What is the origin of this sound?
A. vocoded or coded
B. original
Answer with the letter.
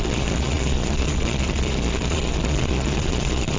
A